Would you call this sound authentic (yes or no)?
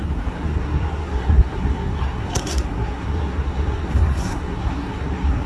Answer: no